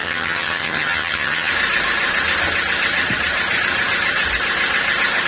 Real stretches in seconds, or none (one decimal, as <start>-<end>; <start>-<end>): 1.5-5.3